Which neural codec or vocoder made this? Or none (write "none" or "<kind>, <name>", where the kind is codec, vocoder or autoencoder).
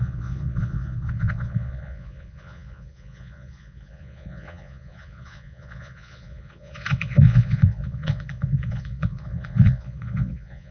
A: vocoder, Vocos